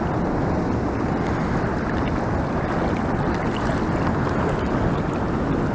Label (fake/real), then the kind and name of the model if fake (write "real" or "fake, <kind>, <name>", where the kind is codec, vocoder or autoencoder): real